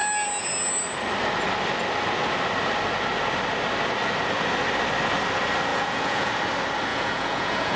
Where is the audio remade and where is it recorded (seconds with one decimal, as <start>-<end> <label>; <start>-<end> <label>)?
0.0-5.7 recorded; 5.7-6.3 remade; 6.3-6.9 recorded; 6.9-7.8 remade